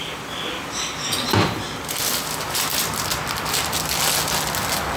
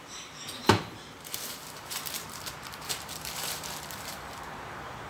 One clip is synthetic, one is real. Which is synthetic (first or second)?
second